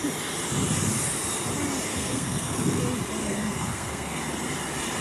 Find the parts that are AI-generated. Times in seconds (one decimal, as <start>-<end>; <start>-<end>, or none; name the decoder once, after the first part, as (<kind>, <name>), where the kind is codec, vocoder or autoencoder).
1.9-2.8 (codec, SNAC); 3.2-4.2